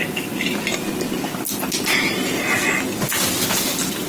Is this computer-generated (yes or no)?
no